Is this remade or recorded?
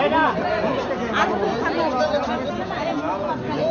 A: recorded